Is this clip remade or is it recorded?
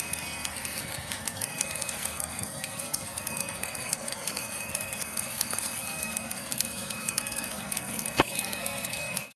remade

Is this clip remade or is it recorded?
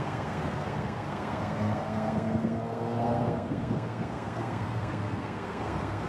remade